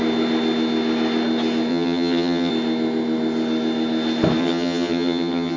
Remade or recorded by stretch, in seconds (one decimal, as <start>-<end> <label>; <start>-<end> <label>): 0.0-1.7 recorded; 1.7-2.5 remade; 2.5-4.4 recorded; 4.4-5.6 remade